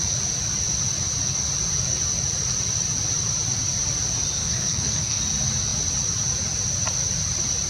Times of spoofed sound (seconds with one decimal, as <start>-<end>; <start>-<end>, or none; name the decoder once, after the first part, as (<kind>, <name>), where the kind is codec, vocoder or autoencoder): 4.4-5.2 (codec, SNAC)